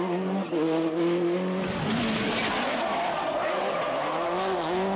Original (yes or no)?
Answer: yes